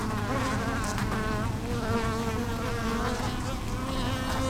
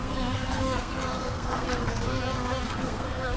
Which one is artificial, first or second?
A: second